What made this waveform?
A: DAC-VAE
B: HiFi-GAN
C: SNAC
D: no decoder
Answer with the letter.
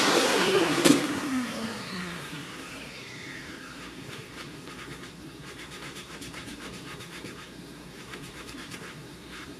C